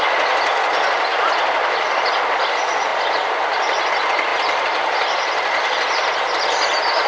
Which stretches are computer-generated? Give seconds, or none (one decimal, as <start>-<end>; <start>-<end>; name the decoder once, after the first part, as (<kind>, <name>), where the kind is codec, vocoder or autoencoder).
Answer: none